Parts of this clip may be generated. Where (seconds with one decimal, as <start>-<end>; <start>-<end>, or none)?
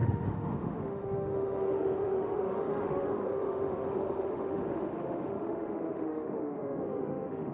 0.0-7.5